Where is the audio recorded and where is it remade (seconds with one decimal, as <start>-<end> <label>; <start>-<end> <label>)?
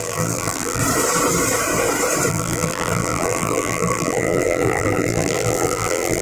0.0-0.8 remade; 0.8-2.3 recorded; 2.3-6.2 remade